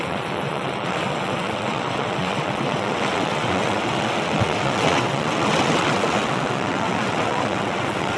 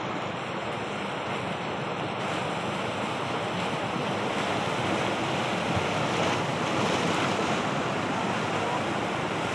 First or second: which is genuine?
second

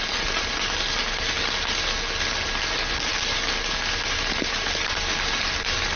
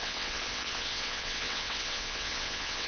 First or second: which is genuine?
first